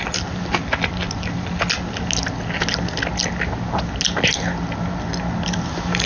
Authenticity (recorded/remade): recorded